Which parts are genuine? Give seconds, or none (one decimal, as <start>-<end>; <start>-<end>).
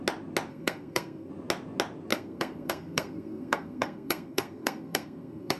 0.0-0.5; 1.3-2.1